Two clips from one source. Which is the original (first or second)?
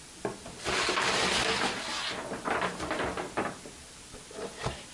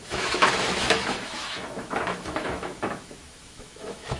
first